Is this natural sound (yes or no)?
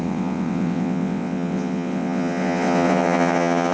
no